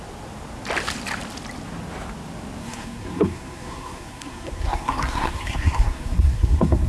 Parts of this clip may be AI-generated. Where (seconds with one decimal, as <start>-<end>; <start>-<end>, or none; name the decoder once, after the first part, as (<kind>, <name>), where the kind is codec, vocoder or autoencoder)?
2.6-6.9 (codec, SNAC)